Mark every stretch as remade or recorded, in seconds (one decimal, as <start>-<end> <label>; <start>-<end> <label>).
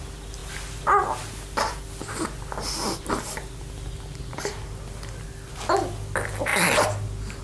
0.0-7.4 recorded